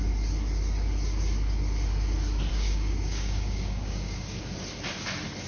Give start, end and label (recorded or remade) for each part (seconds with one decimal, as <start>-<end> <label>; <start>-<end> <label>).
0.0-2.5 recorded; 2.5-4.4 remade; 4.4-5.5 recorded